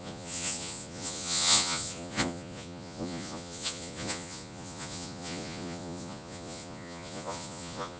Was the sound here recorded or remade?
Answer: remade